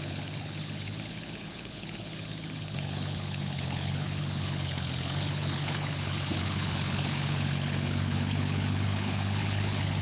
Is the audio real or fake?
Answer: fake